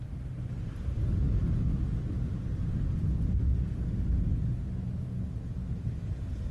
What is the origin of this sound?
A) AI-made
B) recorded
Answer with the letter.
B